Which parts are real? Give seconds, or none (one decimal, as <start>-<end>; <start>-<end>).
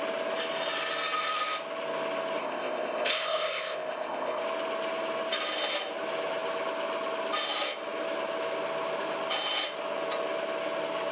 0.0-2.4; 4.4-11.1